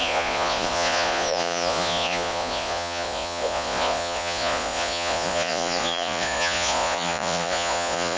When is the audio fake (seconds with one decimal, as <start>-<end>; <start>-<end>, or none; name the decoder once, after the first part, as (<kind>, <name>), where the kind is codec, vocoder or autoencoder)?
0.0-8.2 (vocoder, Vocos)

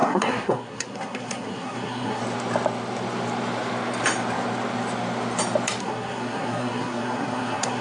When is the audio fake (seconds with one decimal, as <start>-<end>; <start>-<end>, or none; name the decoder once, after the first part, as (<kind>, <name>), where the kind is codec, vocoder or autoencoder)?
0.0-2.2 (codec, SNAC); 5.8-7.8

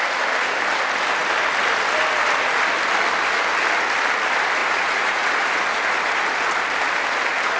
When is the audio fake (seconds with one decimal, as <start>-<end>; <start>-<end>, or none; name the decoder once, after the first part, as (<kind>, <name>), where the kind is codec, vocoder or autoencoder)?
4.6-5.5 (vocoder, Vocos)

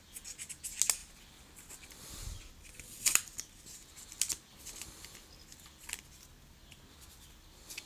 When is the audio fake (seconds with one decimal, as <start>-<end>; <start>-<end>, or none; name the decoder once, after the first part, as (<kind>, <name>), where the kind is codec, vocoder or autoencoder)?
none

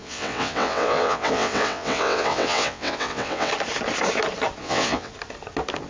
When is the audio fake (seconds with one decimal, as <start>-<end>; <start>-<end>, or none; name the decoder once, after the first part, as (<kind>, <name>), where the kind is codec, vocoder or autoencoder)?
0.0-3.5 (vocoder, WaveNeXt); 4.6-5.1